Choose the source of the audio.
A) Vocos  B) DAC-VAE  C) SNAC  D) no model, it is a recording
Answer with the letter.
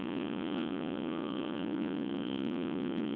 A